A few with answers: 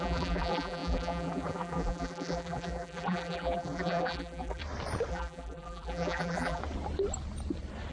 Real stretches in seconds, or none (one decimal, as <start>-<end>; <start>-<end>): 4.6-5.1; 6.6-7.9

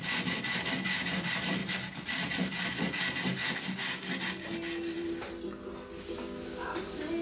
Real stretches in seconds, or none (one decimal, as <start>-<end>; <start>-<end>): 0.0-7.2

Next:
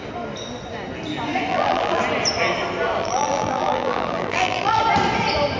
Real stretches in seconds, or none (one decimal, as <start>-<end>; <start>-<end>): 0.0-1.5; 2.0-3.0; 4.8-5.6

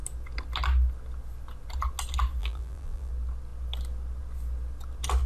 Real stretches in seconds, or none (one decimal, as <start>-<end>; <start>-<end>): 0.0-2.4; 3.1-5.3

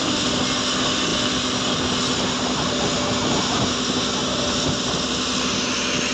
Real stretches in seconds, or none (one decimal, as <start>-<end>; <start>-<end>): 0.0-4.2; 4.7-6.1

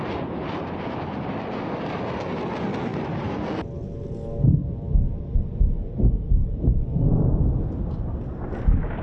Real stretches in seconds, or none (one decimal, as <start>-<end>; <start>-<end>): 0.0-2.9; 3.4-4.6; 5.2-6.4; 7.4-9.0

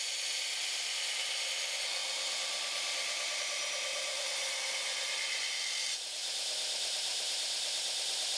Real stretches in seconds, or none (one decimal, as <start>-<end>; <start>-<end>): 0.0-7.1; 7.8-8.4

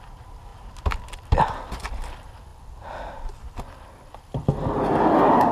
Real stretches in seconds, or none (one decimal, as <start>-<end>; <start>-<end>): 0.5-1.9; 2.5-3.2